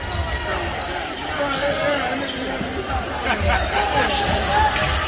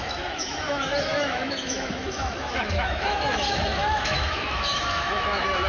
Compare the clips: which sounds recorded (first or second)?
first